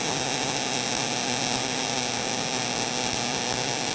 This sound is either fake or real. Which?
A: real